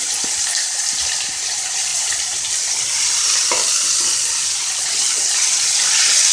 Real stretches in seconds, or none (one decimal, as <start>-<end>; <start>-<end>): 0.0-1.9; 3.3-6.3